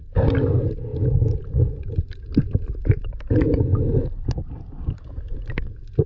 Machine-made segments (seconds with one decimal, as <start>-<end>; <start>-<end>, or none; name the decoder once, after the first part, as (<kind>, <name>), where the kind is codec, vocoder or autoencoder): none